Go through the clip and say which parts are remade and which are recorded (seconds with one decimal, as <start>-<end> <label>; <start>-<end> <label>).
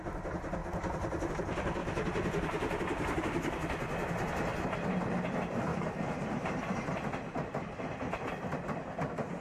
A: 0.0-1.8 recorded; 1.8-3.2 remade; 3.2-5.7 recorded; 5.7-8.2 remade; 8.2-9.4 recorded